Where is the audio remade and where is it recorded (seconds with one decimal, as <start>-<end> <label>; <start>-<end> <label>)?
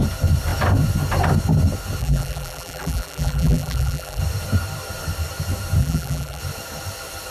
0.0-2.0 recorded; 2.0-4.2 remade; 4.2-5.8 recorded; 5.8-6.4 remade; 6.4-7.3 recorded